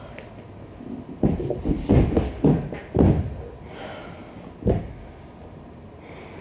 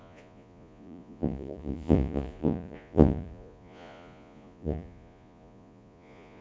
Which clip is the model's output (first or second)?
second